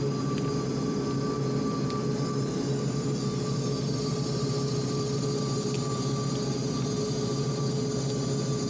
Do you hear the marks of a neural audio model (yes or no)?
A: no